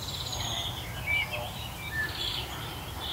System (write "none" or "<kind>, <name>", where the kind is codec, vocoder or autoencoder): none